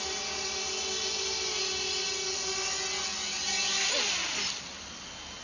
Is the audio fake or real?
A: real